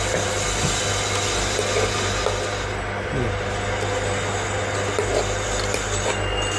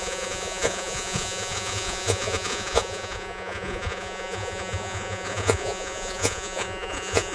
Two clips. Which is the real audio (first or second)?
first